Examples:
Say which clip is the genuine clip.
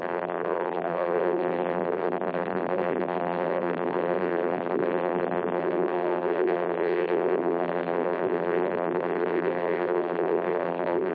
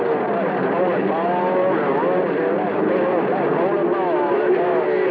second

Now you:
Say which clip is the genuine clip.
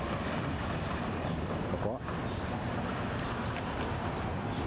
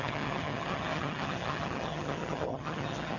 first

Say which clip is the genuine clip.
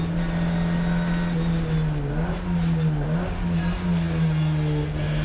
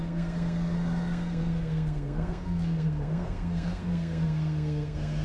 first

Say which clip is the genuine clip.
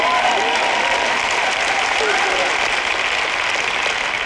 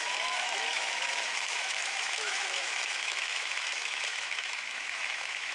first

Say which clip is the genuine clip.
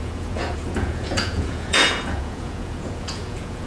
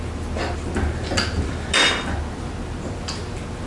second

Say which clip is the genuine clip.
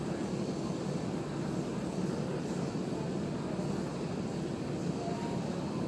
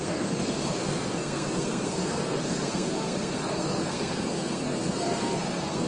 first